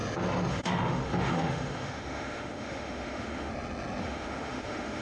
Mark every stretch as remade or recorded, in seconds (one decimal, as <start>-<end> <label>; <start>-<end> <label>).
0.0-0.5 recorded; 0.5-3.5 remade; 3.5-4.0 recorded; 4.0-5.0 remade